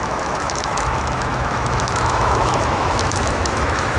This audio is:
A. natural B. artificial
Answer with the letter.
B